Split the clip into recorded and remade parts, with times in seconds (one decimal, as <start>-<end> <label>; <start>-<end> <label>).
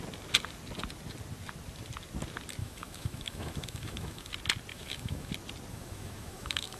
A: 0.0-2.6 recorded; 2.6-4.3 remade; 4.3-4.7 recorded; 4.7-5.3 remade; 5.3-5.7 recorded; 5.7-6.8 remade